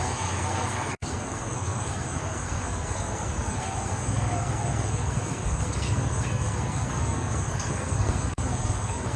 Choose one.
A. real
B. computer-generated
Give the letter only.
B